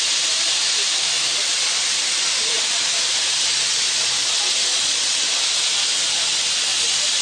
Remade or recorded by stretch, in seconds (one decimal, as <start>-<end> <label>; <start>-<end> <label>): 0.0-4.7 recorded; 4.7-5.2 remade; 5.2-7.2 recorded